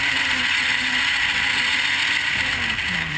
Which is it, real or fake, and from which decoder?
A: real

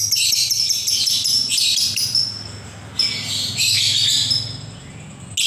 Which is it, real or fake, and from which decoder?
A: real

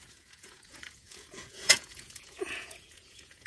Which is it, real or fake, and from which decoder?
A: fake, vocoder, Vocos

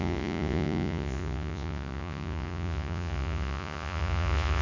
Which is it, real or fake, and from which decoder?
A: fake, vocoder, Vocos